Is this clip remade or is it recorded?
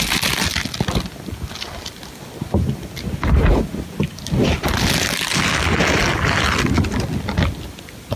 recorded